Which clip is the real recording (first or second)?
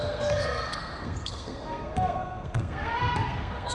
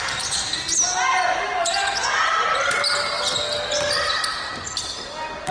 second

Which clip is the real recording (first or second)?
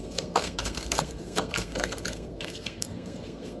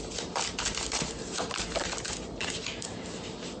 second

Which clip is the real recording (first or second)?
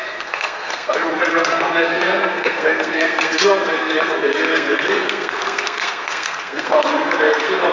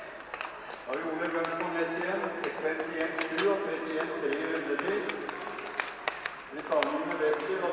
second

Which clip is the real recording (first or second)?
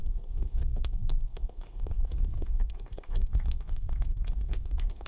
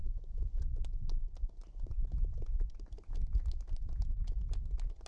second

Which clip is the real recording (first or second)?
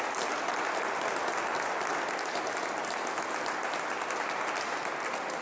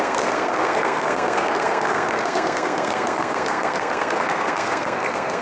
first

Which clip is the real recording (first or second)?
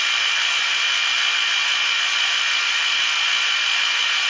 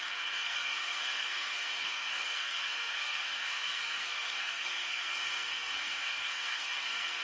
first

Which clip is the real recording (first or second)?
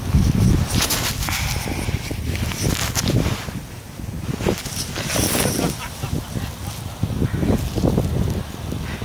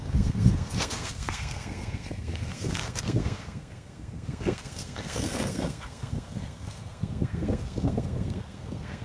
first